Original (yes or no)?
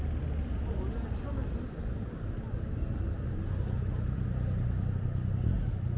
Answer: yes